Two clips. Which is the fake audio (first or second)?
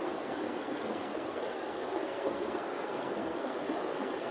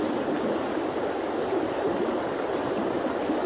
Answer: first